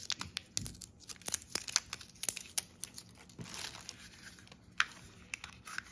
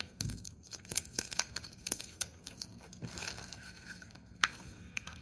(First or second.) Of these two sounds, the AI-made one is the second